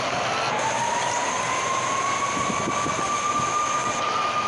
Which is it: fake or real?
real